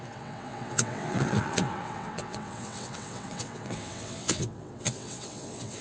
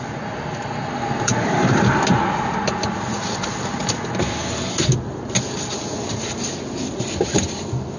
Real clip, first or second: second